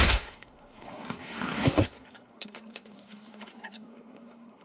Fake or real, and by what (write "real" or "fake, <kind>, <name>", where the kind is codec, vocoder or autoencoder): fake, codec, SNAC